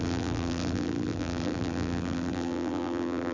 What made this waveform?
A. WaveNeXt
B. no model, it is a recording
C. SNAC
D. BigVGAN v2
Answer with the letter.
D